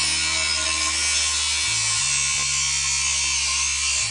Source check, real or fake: real